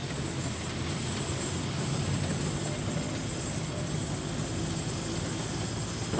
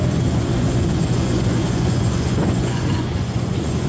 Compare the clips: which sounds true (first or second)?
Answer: first